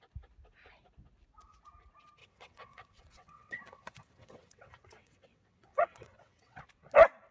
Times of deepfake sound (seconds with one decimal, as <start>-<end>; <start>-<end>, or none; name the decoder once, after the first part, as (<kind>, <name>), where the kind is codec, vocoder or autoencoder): 2.2-6.6 (vocoder, WaveNeXt)